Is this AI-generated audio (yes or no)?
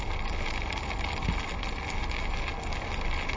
no